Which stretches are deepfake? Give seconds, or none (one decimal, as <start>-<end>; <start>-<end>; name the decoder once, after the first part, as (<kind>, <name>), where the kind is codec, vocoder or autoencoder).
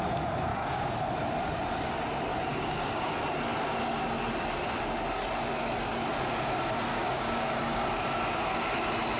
0.5-1.0 (codec, DAC); 2.3-3.1; 6.9-7.9